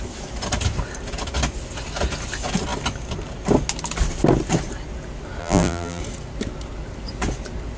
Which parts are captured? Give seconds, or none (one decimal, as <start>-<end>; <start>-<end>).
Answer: 0.0-5.4; 6.0-7.8